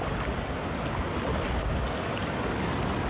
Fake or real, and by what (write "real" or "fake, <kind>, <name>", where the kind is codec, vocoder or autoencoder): real